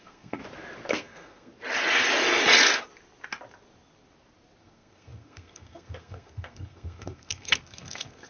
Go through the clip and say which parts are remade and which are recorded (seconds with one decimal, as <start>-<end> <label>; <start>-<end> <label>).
0.0-0.4 remade; 0.4-0.9 recorded; 0.9-1.5 remade; 1.5-4.6 recorded; 4.6-8.3 remade